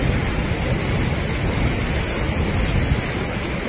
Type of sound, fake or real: real